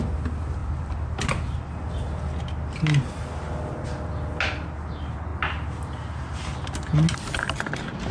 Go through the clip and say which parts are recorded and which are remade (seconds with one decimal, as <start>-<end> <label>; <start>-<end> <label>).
0.0-8.1 recorded